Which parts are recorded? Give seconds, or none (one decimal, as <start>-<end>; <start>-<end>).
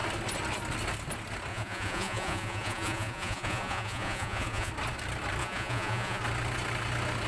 0.0-1.5; 4.7-5.4; 6.2-7.3